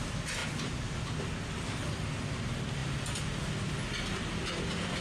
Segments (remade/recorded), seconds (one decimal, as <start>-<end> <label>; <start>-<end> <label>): 0.0-5.0 recorded